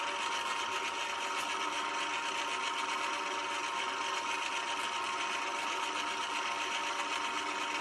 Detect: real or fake real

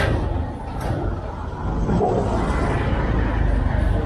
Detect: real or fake real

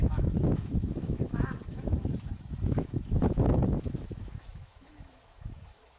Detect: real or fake fake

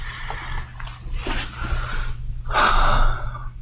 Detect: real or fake real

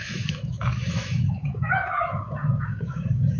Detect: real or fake fake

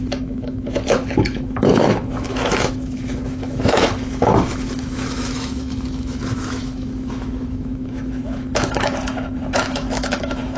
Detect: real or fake fake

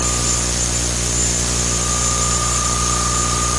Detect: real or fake real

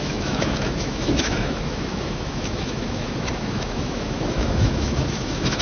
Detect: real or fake fake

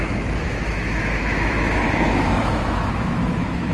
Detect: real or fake fake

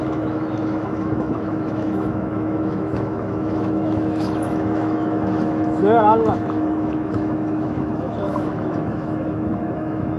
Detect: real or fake fake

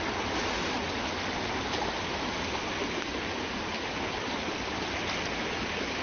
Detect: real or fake real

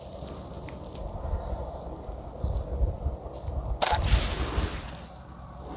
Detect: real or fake real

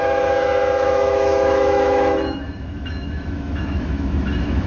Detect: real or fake fake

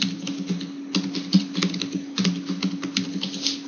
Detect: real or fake real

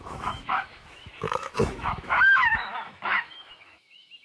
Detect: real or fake fake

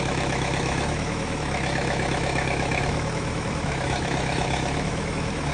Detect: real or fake fake